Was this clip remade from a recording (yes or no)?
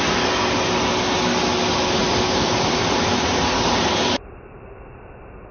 no